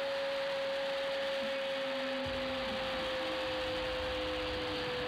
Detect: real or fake real